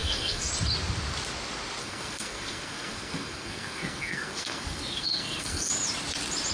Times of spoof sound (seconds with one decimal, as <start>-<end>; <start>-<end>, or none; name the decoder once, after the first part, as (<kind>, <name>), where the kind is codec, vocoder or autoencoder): 0.0-0.5 (codec, SNAC); 1.8-5.7